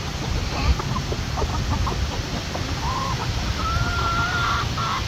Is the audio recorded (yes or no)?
yes